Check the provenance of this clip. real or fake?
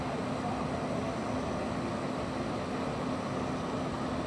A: real